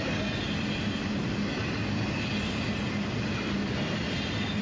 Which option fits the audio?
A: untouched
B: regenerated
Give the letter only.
A